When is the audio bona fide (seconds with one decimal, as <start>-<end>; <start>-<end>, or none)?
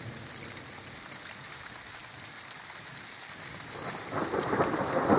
0.0-5.2